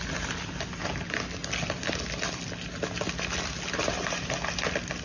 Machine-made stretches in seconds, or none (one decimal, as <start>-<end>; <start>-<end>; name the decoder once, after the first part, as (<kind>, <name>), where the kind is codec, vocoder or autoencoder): none